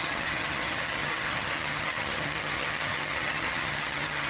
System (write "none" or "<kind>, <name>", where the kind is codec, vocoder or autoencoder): vocoder, HiFi-GAN